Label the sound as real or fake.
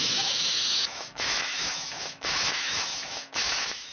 fake